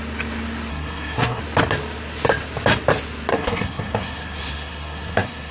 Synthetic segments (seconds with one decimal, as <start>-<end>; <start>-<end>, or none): 0.7-1.4; 3.3-5.5